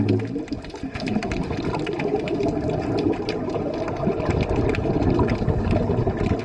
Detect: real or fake real